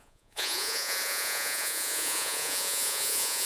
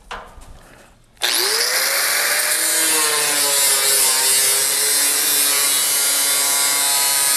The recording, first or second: second